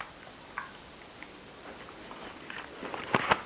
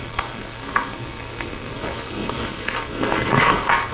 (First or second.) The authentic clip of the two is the first